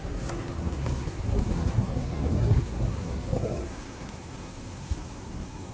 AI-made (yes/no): yes